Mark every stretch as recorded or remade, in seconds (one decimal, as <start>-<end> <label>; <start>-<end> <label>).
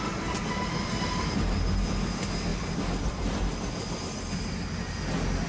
0.0-2.5 recorded; 2.5-4.0 remade; 4.0-5.5 recorded